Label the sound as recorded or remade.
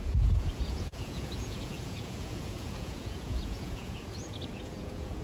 remade